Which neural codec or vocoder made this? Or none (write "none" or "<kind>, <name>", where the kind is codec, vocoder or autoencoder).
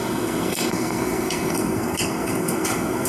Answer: codec, SNAC